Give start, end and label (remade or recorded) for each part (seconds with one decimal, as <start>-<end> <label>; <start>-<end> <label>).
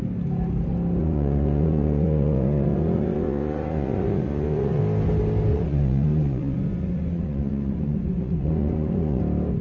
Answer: 0.0-1.0 recorded; 1.0-4.8 remade; 4.8-5.5 recorded; 5.5-9.2 remade; 9.2-9.6 recorded